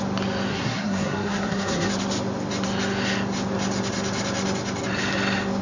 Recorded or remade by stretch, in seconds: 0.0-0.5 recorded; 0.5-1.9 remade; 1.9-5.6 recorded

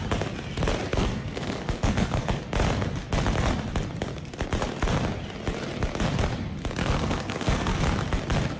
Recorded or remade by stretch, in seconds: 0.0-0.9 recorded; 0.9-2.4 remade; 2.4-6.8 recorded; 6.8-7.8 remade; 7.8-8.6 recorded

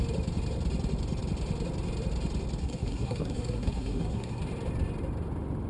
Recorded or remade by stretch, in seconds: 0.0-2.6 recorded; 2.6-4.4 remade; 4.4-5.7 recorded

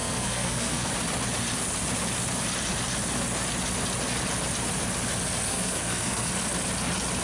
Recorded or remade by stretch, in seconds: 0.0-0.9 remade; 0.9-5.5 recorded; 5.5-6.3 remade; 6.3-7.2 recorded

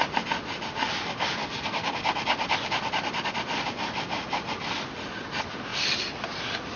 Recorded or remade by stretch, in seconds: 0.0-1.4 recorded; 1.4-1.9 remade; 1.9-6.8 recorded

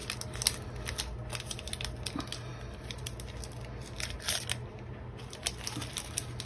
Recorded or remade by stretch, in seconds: 0.0-6.5 recorded